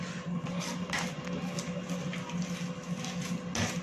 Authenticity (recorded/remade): recorded